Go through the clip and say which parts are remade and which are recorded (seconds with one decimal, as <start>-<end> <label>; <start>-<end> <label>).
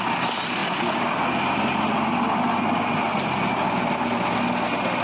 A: 0.0-5.0 recorded